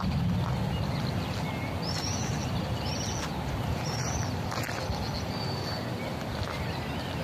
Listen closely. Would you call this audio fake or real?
real